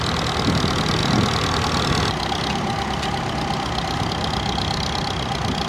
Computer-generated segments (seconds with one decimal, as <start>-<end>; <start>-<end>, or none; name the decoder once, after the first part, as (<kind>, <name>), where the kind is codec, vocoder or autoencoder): none